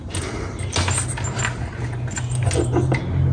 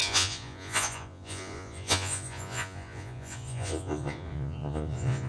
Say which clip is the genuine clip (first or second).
first